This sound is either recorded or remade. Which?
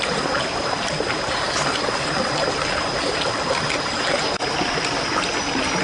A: recorded